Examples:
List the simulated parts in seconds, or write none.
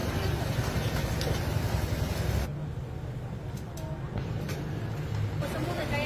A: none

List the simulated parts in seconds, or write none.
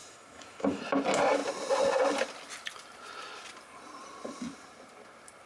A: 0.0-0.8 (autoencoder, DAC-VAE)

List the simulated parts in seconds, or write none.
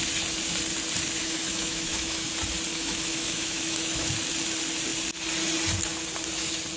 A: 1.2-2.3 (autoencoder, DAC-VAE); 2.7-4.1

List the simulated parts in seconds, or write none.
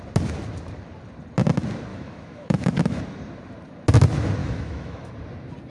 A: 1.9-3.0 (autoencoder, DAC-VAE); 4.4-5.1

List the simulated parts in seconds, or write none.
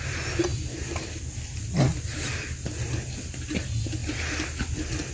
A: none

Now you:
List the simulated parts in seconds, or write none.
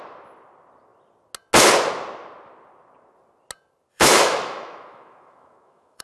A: 3.9-6.0 (autoencoder, DAC-VAE)